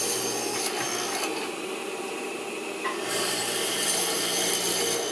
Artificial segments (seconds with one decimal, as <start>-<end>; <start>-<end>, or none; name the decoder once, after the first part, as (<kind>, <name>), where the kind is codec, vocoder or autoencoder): 1.3-4.2 (vocoder, BigVGAN v2)